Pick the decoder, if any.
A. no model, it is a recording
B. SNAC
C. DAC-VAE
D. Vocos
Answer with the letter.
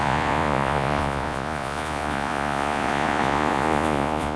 D